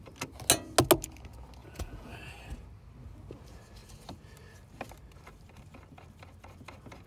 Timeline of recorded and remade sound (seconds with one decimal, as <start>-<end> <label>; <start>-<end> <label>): 0.0-1.6 recorded; 1.6-2.4 remade; 2.4-7.1 recorded